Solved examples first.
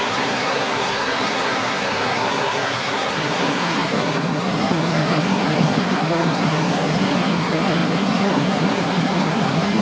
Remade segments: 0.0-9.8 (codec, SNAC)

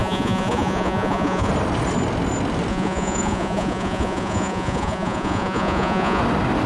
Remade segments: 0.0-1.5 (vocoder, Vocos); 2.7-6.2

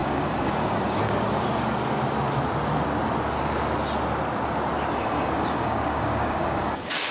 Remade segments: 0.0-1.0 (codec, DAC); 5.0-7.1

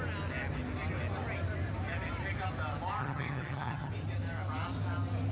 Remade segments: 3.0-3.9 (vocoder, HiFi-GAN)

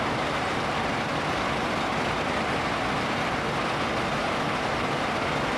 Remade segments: 0.0-0.9 (vocoder, BigVGAN v2); 4.2-5.6